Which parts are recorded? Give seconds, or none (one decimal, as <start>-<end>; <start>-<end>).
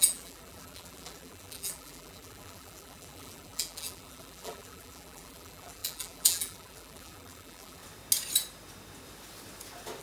7.8-10.0